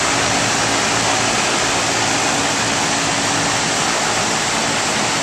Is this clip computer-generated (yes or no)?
no